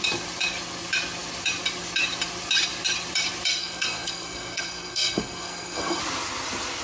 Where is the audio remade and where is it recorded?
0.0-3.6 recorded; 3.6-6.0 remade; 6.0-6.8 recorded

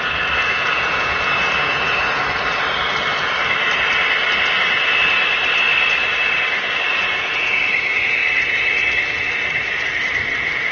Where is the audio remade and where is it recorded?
0.0-0.4 recorded; 0.4-2.3 remade; 2.3-6.9 recorded; 6.9-7.6 remade; 7.6-10.7 recorded

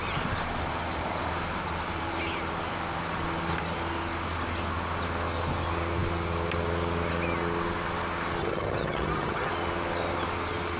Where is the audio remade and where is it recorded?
0.0-8.4 recorded; 8.4-9.5 remade; 9.5-10.8 recorded

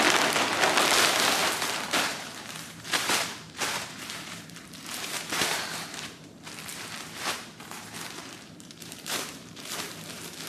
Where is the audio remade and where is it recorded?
0.0-1.4 recorded; 1.4-6.3 remade; 6.3-6.7 recorded; 6.7-9.9 remade; 9.9-10.5 recorded

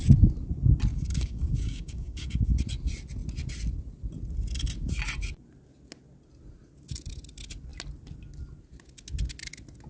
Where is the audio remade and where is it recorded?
0.0-0.9 recorded; 0.9-2.6 remade; 2.6-9.9 recorded

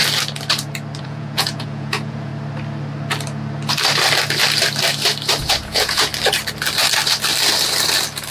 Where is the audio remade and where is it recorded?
0.0-1.0 recorded; 1.0-2.3 remade; 2.3-5.4 recorded; 5.4-6.1 remade; 6.1-8.3 recorded

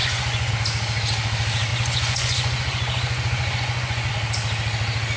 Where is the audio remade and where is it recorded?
0.0-0.5 remade; 0.5-1.7 recorded; 1.7-4.1 remade; 4.1-5.2 recorded

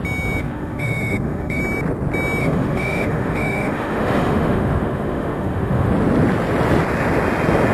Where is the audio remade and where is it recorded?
0.0-0.4 recorded; 0.4-1.6 remade; 1.6-2.4 recorded; 2.4-5.9 remade; 5.9-7.7 recorded